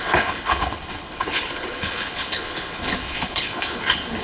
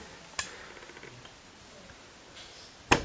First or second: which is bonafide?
second